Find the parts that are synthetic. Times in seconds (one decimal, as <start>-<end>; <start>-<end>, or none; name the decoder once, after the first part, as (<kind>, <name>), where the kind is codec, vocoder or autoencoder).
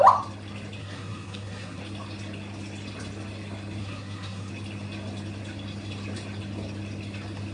0.8-1.8 (codec, SNAC); 3.8-4.5